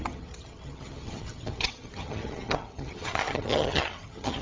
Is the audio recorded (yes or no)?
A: no